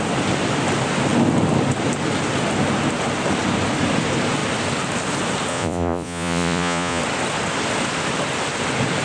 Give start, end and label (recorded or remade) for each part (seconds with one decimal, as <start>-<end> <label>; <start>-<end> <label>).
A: 0.0-5.5 recorded; 5.5-7.0 remade; 7.0-9.0 recorded